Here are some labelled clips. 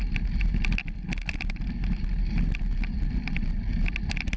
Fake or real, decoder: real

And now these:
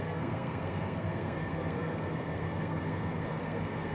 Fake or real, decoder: fake, codec, SNAC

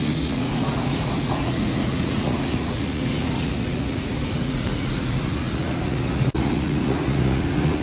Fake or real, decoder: fake, vocoder, Vocos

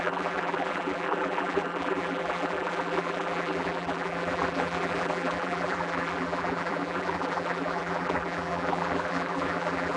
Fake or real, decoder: fake, vocoder, BigVGAN v2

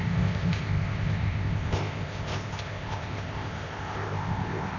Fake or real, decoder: fake, codec, ZipCodec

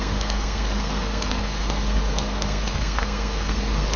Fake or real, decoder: fake, codec, SNAC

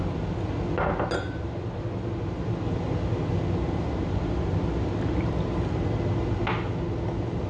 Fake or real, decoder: real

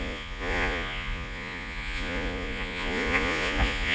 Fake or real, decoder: fake, vocoder, Vocos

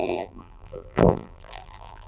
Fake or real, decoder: fake, vocoder, BigVGAN v2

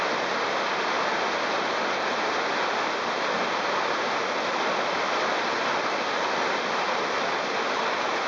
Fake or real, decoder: real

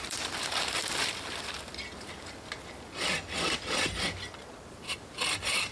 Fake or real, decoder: fake, vocoder, BigVGAN v2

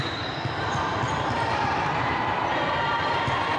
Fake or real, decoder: fake, vocoder, BigVGAN v2